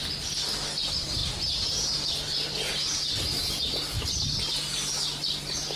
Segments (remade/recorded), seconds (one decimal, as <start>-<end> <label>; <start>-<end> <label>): 0.0-5.8 recorded